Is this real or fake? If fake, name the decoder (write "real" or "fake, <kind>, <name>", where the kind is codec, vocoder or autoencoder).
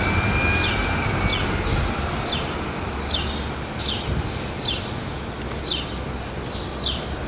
real